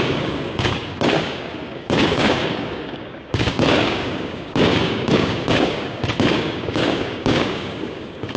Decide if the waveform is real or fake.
fake